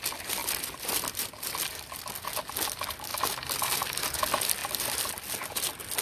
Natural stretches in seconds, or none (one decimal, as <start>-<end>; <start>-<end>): 0.0-0.4; 1.5-4.6; 5.1-6.0